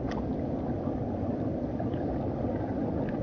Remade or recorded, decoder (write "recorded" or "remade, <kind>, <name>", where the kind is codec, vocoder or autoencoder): recorded